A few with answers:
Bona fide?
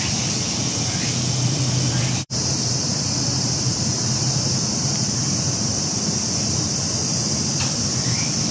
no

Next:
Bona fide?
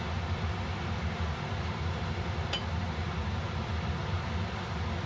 no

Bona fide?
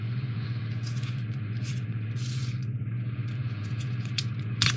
no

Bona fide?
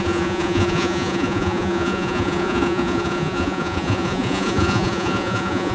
no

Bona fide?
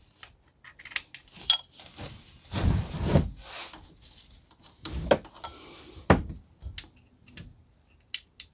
yes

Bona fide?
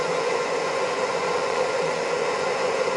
no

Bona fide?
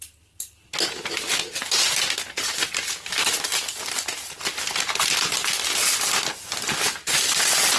yes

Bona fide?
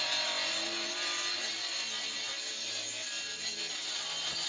yes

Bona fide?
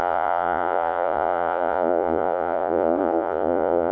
no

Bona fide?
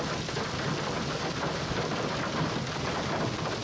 yes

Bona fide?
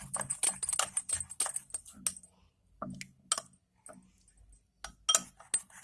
yes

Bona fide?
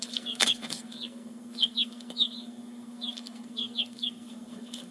no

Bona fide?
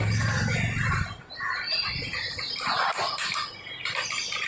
yes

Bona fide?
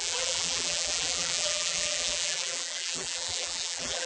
no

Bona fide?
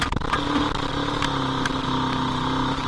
yes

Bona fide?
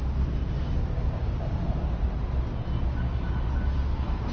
yes